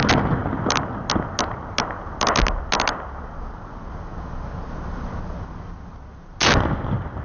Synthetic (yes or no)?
no